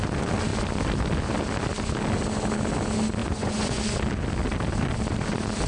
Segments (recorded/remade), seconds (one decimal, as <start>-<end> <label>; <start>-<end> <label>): 0.0-3.2 recorded; 3.2-3.8 remade; 3.8-5.7 recorded